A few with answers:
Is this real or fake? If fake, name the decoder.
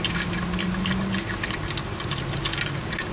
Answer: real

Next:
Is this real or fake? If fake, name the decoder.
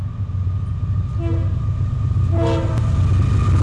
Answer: real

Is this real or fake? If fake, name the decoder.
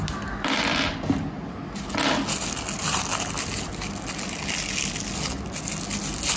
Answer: real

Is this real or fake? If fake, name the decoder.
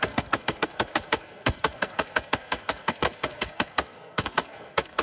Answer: fake, codec, SNAC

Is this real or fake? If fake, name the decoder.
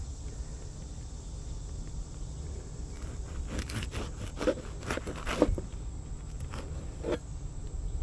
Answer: real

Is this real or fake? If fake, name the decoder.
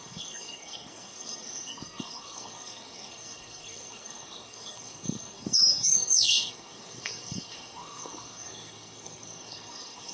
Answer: fake, codec, SNAC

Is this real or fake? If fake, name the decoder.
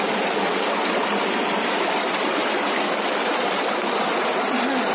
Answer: real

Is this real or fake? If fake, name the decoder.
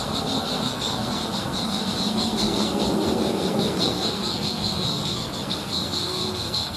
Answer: fake, codec, SNAC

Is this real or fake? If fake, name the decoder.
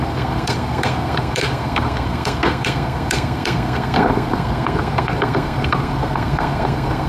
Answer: fake, codec, SNAC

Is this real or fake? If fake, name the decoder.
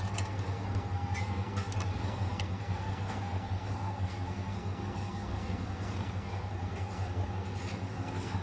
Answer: fake, codec, SNAC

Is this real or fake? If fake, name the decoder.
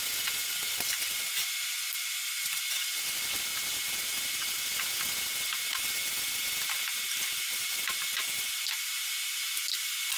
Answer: real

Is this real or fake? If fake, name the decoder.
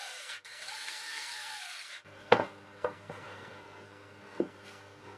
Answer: fake, codec, SNAC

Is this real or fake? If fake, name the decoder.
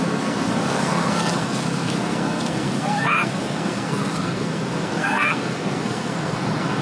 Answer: fake, codec, SNAC